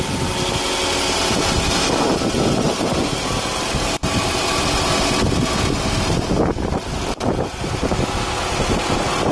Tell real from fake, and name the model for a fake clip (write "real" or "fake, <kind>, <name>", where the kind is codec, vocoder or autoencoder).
real